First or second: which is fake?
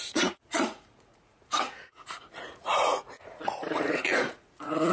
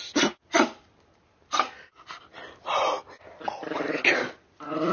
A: first